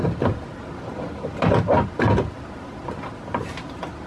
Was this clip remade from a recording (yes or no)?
no